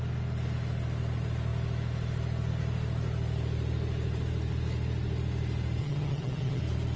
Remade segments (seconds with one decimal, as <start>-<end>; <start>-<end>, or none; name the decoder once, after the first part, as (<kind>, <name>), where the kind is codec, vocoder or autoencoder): 5.8-6.6 (vocoder, HiFi-GAN)